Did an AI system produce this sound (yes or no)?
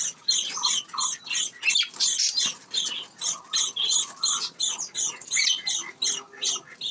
no